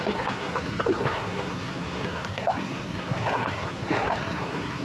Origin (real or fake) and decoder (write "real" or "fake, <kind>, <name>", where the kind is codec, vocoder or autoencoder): fake, codec, SNAC